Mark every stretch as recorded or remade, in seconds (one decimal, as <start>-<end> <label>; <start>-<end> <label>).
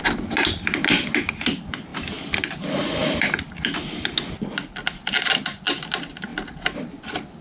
0.0-7.4 recorded